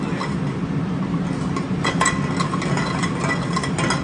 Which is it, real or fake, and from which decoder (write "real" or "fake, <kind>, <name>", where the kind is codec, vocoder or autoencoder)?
real